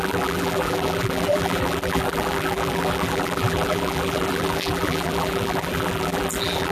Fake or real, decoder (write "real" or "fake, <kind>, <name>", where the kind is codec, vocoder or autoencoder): fake, vocoder, BigVGAN v2